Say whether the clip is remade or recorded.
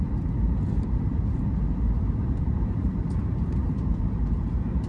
remade